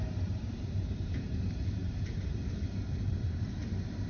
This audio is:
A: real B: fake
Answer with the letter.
B